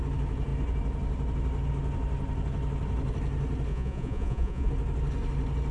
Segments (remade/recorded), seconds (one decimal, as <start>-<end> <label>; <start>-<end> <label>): 0.0-3.7 recorded; 3.7-4.7 remade; 4.7-5.7 recorded